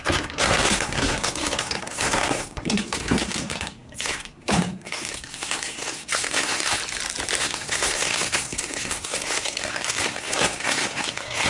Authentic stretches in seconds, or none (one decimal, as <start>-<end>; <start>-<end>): 6.8-7.4